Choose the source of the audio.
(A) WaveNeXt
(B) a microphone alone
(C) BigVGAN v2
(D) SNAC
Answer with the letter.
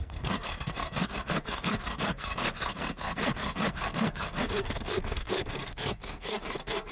D